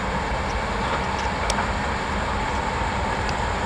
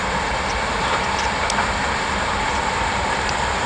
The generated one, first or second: second